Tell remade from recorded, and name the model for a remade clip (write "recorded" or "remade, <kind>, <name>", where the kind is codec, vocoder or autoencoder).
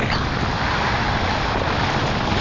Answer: recorded